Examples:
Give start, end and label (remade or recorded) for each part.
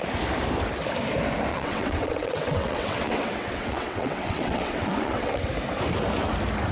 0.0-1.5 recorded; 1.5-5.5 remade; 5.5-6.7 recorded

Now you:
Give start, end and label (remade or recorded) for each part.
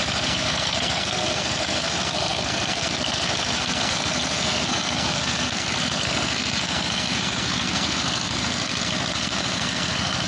0.0-10.3 remade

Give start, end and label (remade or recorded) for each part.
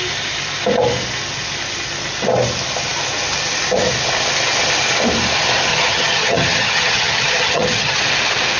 0.0-5.7 recorded; 5.7-8.0 remade; 8.0-8.6 recorded